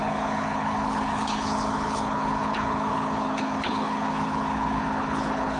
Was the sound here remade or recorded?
remade